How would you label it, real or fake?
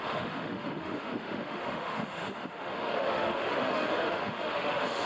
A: fake